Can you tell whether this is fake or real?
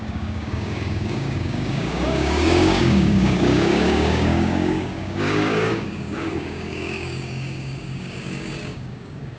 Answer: fake